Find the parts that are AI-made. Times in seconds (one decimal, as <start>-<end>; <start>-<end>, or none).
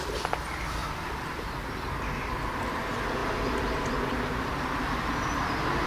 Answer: 0.8-1.4